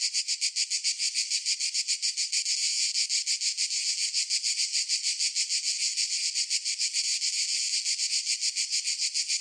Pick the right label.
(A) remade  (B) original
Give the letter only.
B